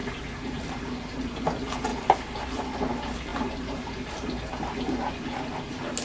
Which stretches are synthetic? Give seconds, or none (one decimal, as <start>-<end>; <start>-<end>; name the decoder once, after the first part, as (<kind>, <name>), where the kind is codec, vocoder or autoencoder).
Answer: 0.0-1.2 (vocoder, BigVGAN v2); 3.3-4.5